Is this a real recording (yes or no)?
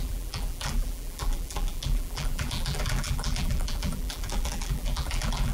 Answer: no